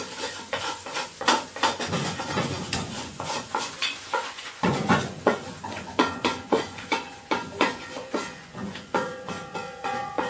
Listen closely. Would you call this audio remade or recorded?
remade